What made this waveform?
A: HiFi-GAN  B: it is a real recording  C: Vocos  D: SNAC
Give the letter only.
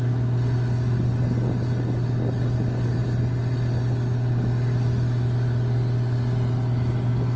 B